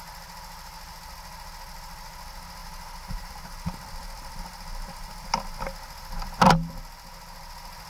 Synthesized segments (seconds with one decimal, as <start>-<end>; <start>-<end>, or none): 2.6-3.3